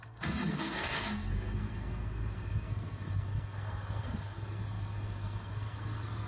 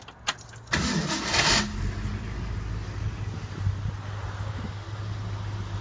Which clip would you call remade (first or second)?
first